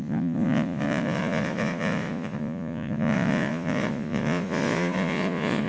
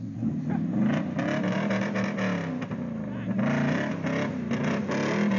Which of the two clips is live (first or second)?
second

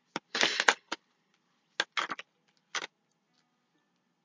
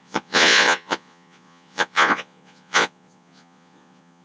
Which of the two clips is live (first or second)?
first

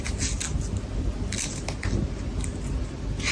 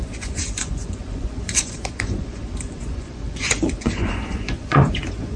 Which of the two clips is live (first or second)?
first